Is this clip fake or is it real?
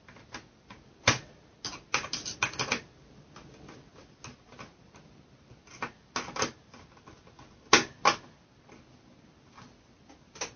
real